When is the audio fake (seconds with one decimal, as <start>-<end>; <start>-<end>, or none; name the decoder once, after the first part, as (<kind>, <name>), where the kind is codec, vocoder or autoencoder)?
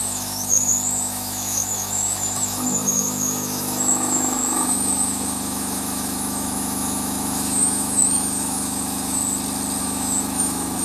0.0-9.2 (autoencoder, DAC-VAE); 9.8-10.8